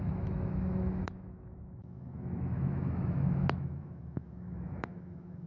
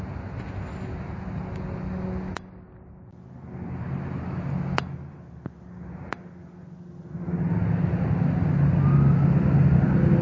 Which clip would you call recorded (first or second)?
second